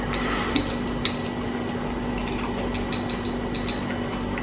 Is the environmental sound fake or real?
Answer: real